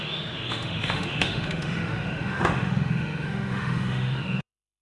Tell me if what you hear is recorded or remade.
remade